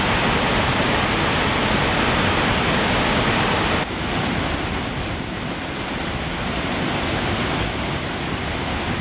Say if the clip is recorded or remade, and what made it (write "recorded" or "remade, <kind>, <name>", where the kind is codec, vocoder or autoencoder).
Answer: recorded